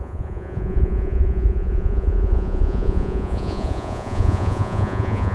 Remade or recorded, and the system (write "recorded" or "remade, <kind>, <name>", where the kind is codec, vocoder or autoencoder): remade, vocoder, Vocos